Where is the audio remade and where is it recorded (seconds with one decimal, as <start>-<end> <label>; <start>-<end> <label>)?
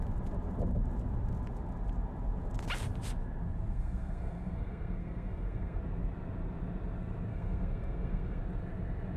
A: 0.0-3.7 recorded; 3.7-5.8 remade; 5.8-7.3 recorded; 7.3-8.4 remade; 8.4-9.2 recorded